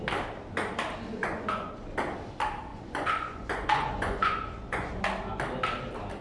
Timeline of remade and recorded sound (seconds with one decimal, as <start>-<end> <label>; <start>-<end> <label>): 0.0-1.2 recorded; 1.2-1.7 remade; 1.7-2.7 recorded; 2.7-5.0 remade; 5.0-6.2 recorded

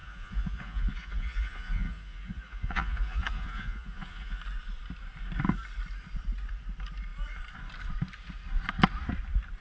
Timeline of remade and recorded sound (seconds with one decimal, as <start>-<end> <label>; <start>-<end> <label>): 0.0-4.4 remade; 4.4-9.6 recorded

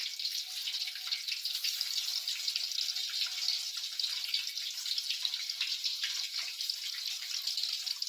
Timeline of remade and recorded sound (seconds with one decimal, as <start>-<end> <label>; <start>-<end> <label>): 0.0-8.1 recorded

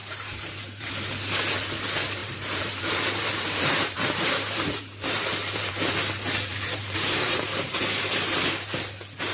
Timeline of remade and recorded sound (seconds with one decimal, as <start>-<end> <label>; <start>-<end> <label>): 0.0-0.9 remade; 0.9-2.2 recorded; 2.2-5.9 remade; 5.9-6.5 recorded; 6.5-7.8 remade; 7.8-9.3 recorded

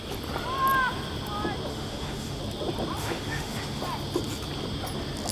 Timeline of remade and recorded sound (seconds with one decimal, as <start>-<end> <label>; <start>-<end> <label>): 0.0-1.7 recorded; 1.7-2.4 remade; 2.4-3.0 recorded; 3.0-3.8 remade; 3.8-5.3 recorded

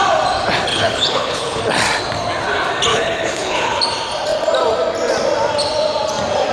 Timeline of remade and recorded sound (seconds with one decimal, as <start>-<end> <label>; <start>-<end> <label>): 0.0-0.7 recorded; 0.7-1.6 remade; 1.6-2.9 recorded; 2.9-3.8 remade; 3.8-6.5 recorded

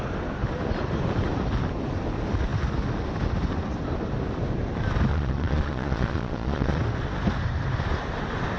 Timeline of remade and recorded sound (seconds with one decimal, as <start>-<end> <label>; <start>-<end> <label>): 0.0-5.1 recorded; 5.1-6.8 remade; 6.8-8.6 recorded

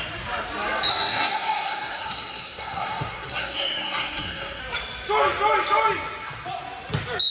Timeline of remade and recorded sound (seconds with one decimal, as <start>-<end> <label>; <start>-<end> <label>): 0.0-0.9 recorded; 0.9-4.6 remade; 4.6-7.3 recorded